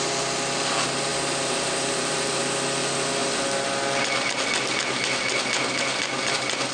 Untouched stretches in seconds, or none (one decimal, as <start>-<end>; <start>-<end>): 0.0-1.1; 2.4-6.7